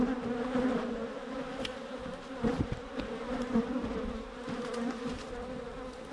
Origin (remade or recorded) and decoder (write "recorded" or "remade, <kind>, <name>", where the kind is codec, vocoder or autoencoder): remade, vocoder, BigVGAN v2